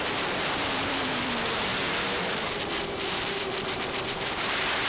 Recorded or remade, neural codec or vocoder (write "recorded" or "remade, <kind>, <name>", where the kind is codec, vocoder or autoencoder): remade, vocoder, BigVGAN v2